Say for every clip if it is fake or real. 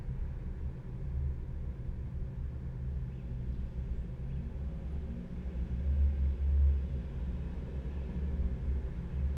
real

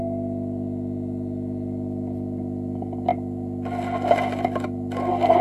real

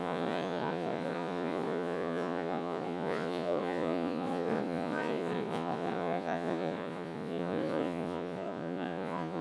fake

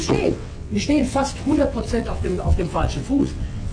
fake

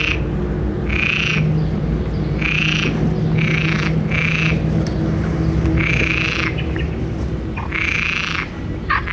real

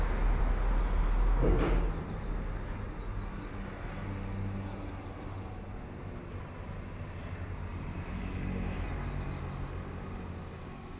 real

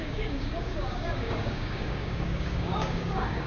fake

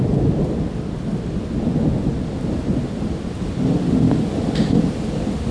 real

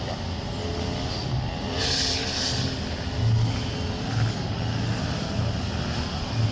real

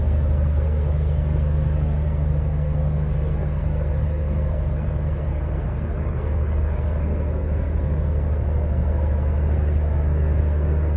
fake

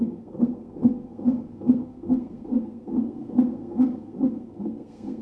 fake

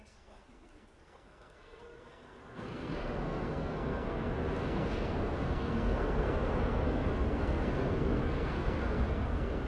fake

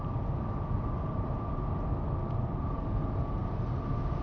real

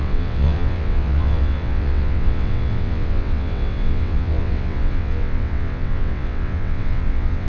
fake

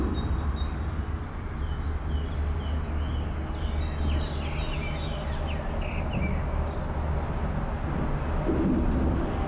real